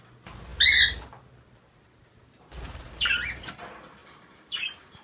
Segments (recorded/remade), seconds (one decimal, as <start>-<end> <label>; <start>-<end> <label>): 0.0-4.0 recorded; 4.0-5.0 remade